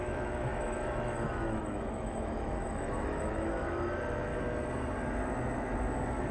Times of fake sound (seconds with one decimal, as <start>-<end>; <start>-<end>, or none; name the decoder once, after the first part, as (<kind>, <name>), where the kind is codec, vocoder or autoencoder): 0.0-4.3 (autoencoder, DAC-VAE)